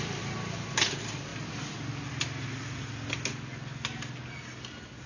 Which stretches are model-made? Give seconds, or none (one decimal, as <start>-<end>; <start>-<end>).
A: none